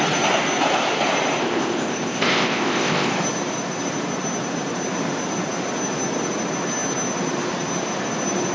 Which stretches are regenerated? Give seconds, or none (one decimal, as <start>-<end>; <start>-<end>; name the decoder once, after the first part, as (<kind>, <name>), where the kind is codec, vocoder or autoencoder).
1.4-3.1 (codec, ZipCodec)